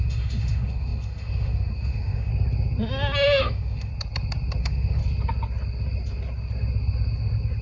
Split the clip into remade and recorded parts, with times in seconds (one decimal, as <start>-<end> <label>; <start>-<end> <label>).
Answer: 0.0-2.3 remade; 2.3-3.4 recorded; 3.4-3.9 remade; 3.9-4.6 recorded; 4.6-5.0 remade; 5.0-7.6 recorded